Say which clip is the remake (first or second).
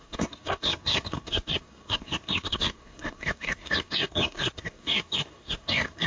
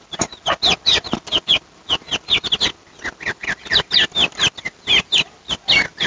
first